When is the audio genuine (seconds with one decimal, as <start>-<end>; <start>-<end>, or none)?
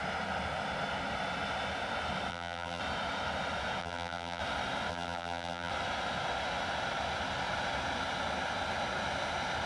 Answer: 0.0-2.3; 2.8-3.8; 4.4-4.9; 5.7-9.7